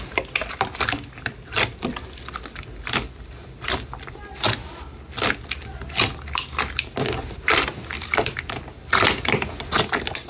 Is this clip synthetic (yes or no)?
no